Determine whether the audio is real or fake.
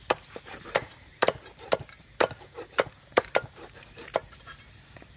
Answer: fake